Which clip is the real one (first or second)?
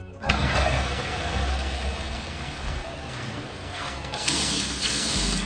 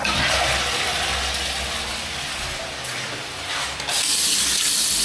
second